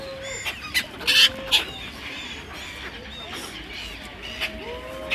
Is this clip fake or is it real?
real